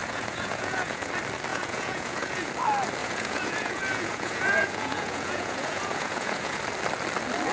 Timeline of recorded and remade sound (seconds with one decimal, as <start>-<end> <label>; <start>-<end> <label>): 0.0-1.1 remade; 1.1-1.5 recorded; 1.5-2.5 remade; 2.5-3.0 recorded; 3.0-6.6 remade; 6.6-7.5 recorded